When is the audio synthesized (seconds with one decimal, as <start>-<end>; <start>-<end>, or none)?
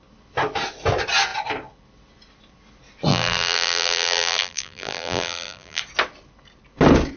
3.1-5.8